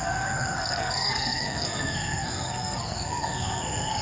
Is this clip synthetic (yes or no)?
yes